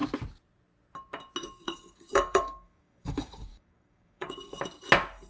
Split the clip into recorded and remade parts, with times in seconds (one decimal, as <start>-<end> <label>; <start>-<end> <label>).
0.0-1.4 recorded; 1.4-4.6 remade; 4.6-5.3 recorded